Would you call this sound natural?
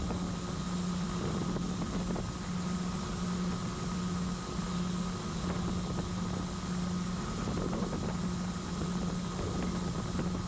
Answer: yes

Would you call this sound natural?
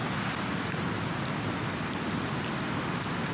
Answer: yes